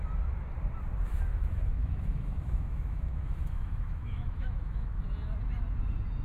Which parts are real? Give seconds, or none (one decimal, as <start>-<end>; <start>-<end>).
0.0-1.3; 5.0-6.2